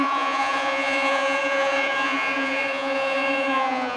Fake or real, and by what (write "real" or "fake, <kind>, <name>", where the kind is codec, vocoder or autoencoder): fake, vocoder, Vocos